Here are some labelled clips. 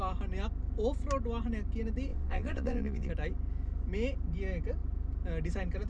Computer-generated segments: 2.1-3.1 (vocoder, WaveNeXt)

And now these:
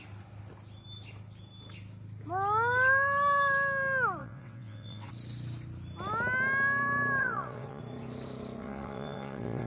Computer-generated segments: 4.2-5.1 (vocoder, WaveNeXt); 7.2-7.8; 8.6-9.7

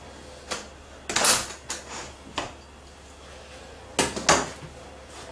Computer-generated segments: none

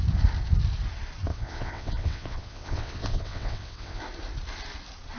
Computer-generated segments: 1.3-4.0 (vocoder, WaveNeXt)

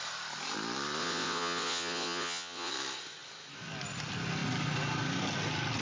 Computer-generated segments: 1.0-2.7 (vocoder, WaveNeXt)

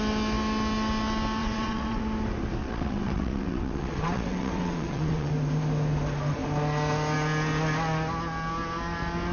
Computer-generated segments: 1.4-2.0 (vocoder, WaveNeXt); 2.6-5.3